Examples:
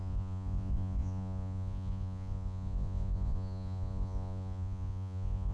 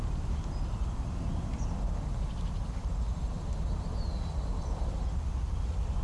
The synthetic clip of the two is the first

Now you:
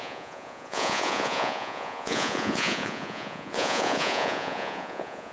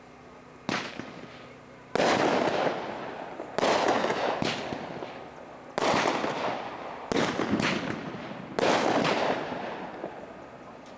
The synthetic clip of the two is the first